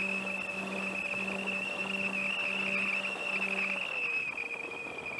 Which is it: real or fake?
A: real